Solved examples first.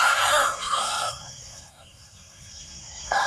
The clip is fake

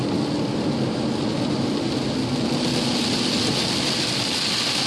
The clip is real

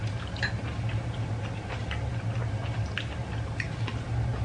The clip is real